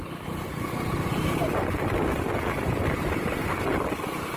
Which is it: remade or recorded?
recorded